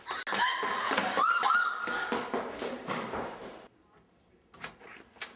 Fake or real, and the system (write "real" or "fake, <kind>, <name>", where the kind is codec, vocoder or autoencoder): real